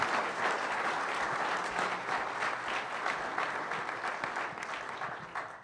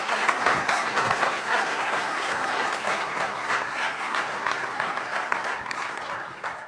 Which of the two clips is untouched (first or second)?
first